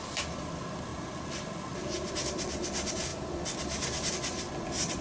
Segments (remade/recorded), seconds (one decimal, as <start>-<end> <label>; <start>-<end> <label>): 0.0-5.0 recorded